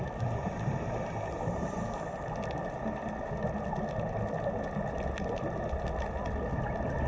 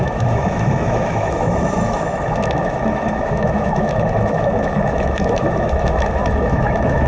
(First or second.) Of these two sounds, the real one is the first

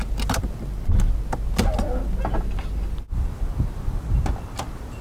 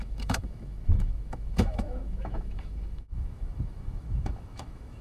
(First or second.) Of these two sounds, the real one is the first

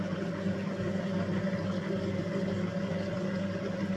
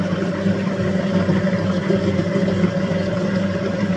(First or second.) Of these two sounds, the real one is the first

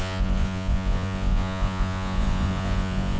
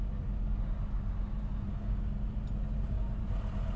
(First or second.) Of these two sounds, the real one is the second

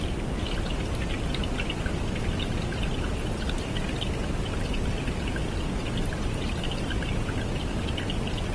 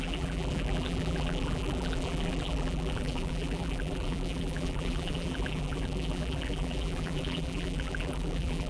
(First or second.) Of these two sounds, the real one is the first